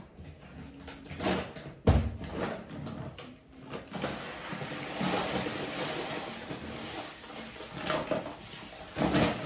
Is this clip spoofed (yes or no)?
no